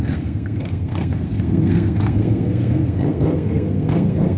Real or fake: fake